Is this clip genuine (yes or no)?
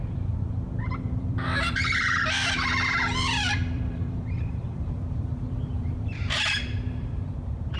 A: no